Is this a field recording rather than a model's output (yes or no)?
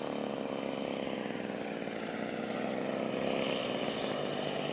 yes